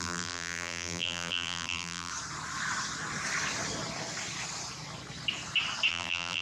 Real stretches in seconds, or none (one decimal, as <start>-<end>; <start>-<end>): 2.1-5.9